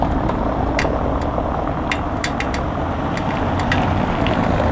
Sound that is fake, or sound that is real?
real